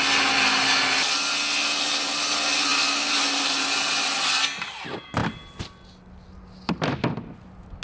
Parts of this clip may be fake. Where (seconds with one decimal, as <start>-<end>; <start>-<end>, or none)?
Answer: none